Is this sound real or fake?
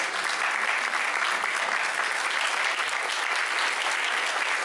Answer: real